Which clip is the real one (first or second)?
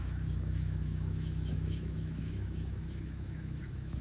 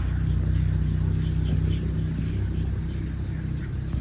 second